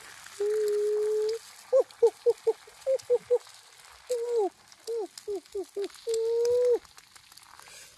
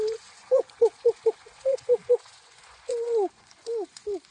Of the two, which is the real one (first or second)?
first